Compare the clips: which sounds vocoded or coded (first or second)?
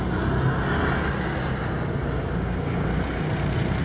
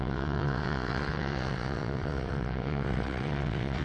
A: second